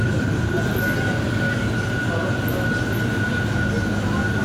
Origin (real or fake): real